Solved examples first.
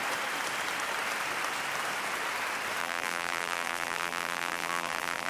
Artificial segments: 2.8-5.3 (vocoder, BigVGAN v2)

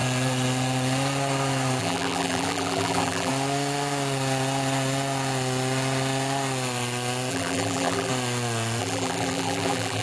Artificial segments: 1.8-3.3 (vocoder, BigVGAN v2); 7.3-8.1; 8.8-10.0

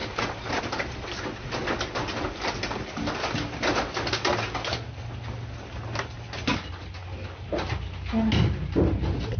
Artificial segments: none

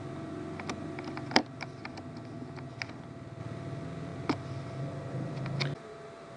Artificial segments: none

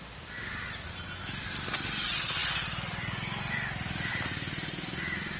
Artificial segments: none

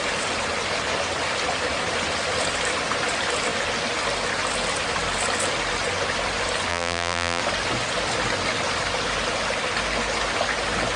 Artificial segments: 6.7-7.4 (vocoder, BigVGAN v2)